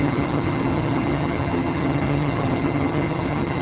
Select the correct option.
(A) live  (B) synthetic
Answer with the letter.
B